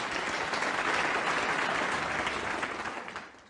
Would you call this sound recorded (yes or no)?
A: yes